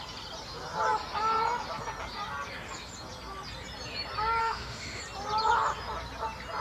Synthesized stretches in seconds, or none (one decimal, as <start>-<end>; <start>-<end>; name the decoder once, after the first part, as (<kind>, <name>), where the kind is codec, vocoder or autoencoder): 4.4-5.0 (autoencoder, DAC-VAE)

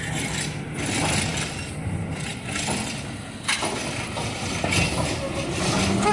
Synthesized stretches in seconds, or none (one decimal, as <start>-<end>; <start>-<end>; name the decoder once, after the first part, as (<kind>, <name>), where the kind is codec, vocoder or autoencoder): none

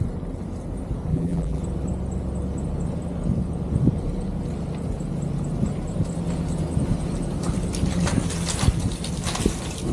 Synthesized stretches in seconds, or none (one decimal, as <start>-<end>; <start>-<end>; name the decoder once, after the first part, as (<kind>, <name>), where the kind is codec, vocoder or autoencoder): 1.1-1.6 (vocoder, BigVGAN v2)

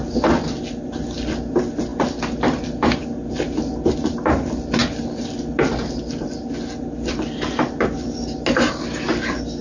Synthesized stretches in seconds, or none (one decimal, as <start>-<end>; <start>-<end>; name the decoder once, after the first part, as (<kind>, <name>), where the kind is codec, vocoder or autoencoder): none